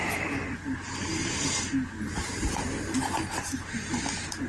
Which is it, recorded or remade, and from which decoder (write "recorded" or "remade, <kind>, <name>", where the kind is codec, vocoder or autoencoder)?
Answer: recorded